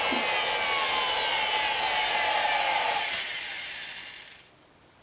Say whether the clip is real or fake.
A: real